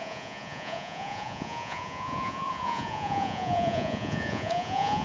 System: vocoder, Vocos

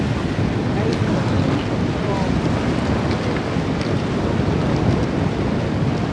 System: none